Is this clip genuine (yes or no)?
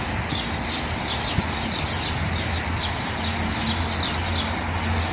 yes